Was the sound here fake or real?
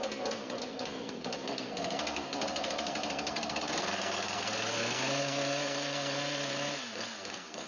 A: fake